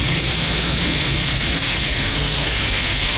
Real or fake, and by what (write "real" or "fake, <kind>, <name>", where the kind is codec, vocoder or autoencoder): fake, codec, SNAC